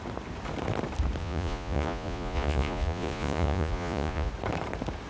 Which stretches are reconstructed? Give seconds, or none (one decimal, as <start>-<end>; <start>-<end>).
1.2-4.3